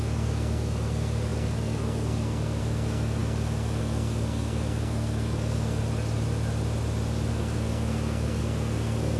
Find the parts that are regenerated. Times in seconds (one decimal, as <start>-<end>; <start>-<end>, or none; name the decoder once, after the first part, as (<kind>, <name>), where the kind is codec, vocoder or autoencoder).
0.0-5.8 (codec, SNAC); 7.3-9.2